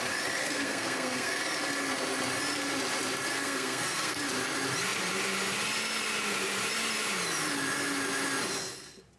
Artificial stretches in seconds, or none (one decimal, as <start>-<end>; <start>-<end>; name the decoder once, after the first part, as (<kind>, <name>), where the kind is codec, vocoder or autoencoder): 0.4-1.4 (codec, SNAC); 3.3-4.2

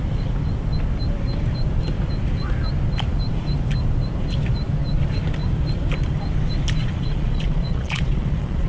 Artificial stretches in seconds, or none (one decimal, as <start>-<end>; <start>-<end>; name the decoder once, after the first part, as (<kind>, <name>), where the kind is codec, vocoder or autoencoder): 6.8-8.7 (vocoder, Vocos)

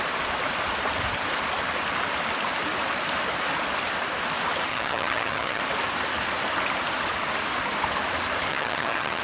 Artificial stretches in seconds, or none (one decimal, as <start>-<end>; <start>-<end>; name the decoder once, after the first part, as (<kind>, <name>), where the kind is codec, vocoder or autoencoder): 4.7-5.6 (vocoder, HiFi-GAN); 8.5-9.2

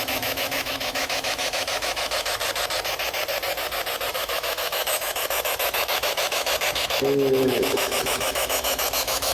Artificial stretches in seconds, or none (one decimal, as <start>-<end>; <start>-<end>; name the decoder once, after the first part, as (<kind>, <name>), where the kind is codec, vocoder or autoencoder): 0.0-2.4 (autoencoder, DAC-VAE); 4.1-9.3